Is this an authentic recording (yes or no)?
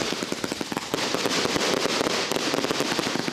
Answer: yes